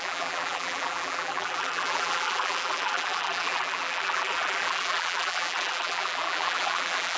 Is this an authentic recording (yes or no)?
no